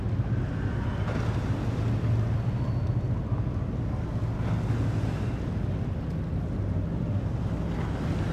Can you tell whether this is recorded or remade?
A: recorded